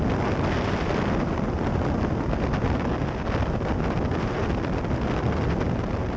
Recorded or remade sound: recorded